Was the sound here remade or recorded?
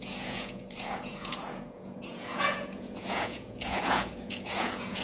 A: remade